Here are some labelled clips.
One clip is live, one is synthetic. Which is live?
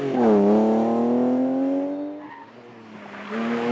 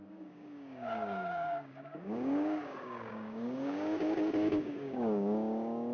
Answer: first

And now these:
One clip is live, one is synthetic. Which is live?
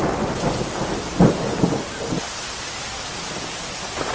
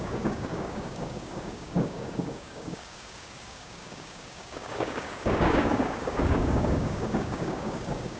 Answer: first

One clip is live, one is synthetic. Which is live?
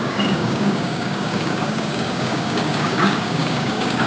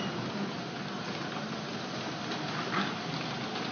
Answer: second